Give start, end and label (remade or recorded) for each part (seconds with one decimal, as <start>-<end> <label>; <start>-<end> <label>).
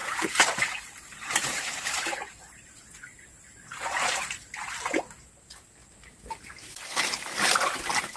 0.0-4.9 remade; 4.9-8.2 recorded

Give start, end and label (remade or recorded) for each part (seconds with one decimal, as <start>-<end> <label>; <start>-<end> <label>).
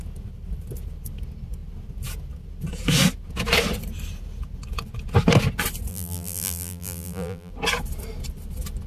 0.0-5.9 recorded; 5.9-7.5 remade; 7.5-8.9 recorded